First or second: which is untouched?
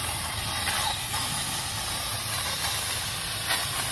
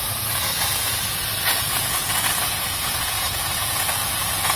first